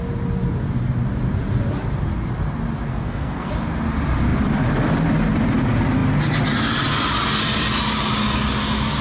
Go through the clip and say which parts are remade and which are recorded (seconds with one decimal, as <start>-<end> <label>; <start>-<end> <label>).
0.0-2.9 recorded; 2.9-3.5 remade; 3.5-9.0 recorded